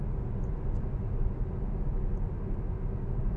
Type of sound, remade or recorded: recorded